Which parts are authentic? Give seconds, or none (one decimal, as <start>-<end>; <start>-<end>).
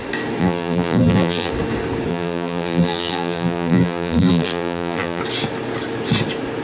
0.0-0.4; 1.5-2.1; 5.2-6.6